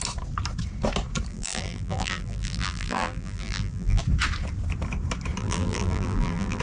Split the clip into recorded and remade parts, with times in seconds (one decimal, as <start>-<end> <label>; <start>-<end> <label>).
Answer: 0.0-1.3 recorded; 1.3-4.0 remade; 4.0-5.4 recorded; 5.4-6.6 remade